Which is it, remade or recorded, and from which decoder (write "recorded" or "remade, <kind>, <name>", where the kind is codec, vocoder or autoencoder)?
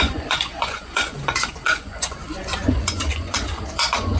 remade, vocoder, Vocos